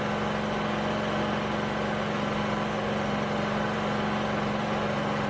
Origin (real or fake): real